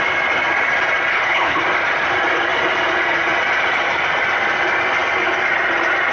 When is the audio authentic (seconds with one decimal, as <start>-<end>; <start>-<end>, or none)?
0.0-1.1; 1.6-6.1